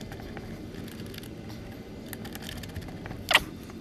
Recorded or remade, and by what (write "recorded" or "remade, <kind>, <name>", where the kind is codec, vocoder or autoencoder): recorded